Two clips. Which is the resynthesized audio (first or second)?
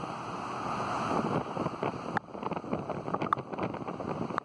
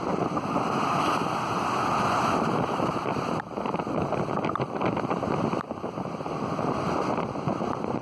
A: second